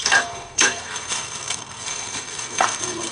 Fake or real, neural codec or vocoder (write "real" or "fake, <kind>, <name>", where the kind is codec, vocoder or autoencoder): fake, codec, SNAC